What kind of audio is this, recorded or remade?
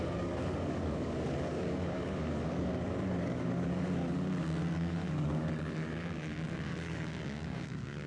remade